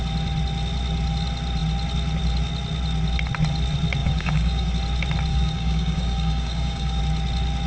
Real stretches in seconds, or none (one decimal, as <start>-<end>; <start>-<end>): 0.0-4.0; 4.7-5.3; 7.0-7.7